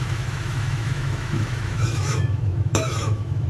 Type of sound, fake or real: fake